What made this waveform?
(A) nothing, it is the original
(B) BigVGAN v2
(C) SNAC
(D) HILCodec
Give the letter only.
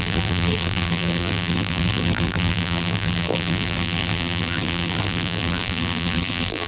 B